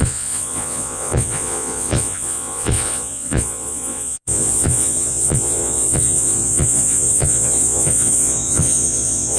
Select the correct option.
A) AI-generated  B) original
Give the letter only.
A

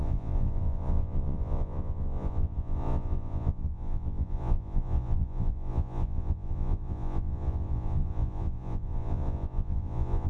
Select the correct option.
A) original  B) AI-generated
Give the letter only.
B